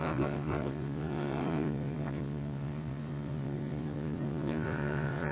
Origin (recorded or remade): remade